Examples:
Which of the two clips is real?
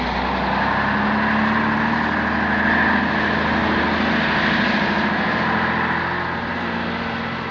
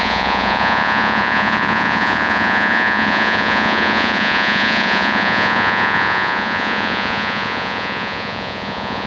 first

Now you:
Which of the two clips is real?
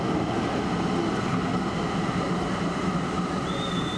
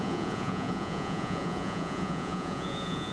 first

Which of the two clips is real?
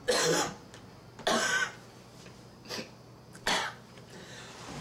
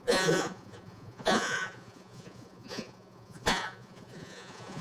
first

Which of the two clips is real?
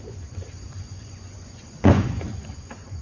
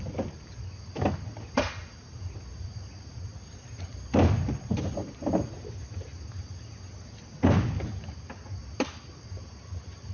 second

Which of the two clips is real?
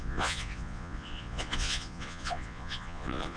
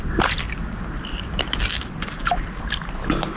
second